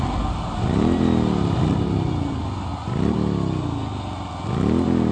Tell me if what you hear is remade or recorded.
recorded